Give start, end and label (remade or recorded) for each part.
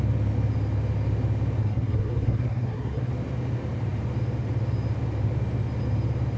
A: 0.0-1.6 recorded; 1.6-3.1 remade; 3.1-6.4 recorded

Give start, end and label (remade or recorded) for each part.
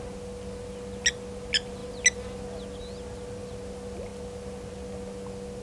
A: 0.0-5.6 recorded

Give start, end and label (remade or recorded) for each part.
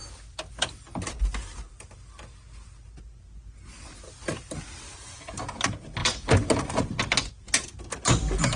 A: 0.0-8.6 recorded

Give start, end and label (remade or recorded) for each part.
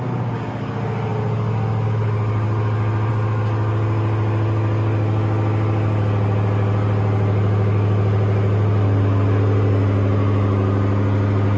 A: 0.0-11.6 recorded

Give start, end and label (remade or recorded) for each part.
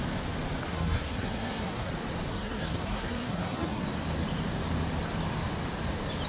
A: 0.0-0.7 recorded; 0.7-1.9 remade; 1.9-2.3 recorded; 2.3-3.8 remade; 3.8-6.3 recorded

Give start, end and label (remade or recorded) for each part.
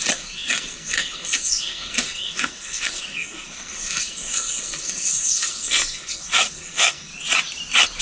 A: 0.0-7.1 remade; 7.1-8.0 recorded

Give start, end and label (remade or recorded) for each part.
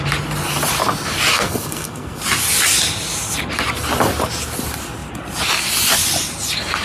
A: 0.0-1.3 recorded; 1.3-2.2 remade; 2.2-6.8 recorded